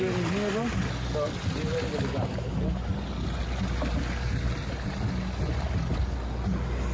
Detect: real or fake real